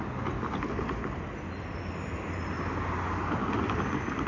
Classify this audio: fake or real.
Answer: real